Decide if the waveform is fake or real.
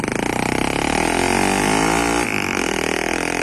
real